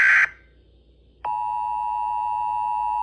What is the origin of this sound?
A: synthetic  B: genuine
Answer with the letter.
B